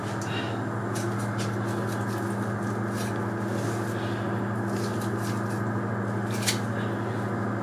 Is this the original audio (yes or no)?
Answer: yes